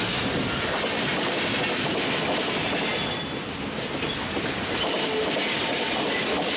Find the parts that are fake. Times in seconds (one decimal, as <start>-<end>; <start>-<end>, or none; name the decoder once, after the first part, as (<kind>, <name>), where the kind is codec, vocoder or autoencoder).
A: none